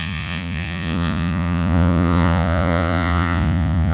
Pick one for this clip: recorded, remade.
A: remade